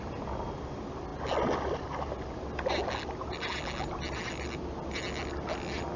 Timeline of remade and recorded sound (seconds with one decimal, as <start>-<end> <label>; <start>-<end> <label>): 0.0-6.0 recorded